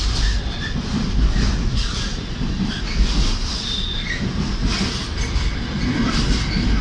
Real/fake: real